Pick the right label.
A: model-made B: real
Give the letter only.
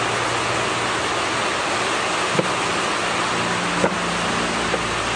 B